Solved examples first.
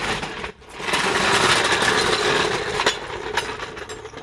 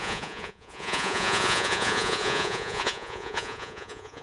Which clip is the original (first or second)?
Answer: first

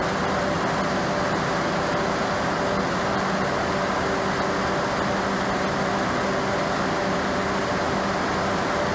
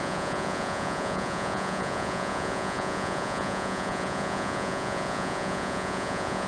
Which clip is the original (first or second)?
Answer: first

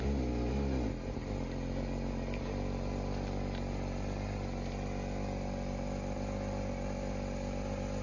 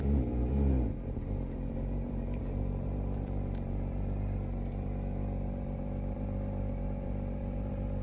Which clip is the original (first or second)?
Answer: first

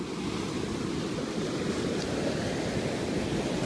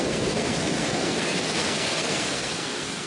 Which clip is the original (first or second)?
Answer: first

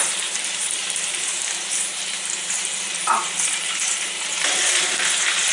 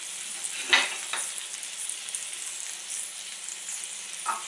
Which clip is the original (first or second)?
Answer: second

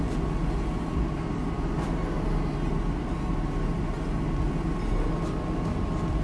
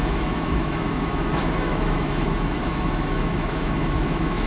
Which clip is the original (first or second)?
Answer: first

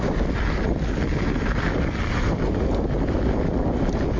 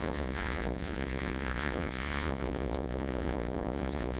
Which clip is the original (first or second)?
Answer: first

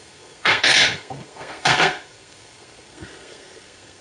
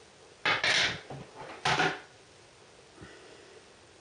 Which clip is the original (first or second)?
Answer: second